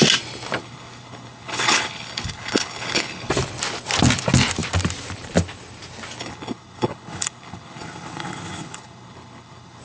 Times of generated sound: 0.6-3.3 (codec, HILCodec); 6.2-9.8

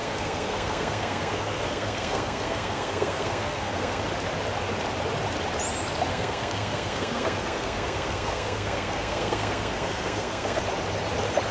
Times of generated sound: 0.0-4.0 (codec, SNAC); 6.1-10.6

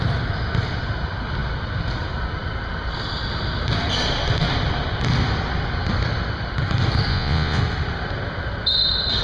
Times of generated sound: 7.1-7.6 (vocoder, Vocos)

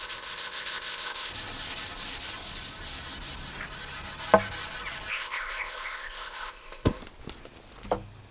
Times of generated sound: 0.0-1.3 (codec, ZipCodec); 5.1-7.0